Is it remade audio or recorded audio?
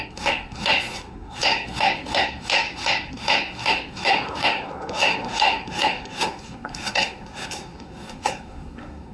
remade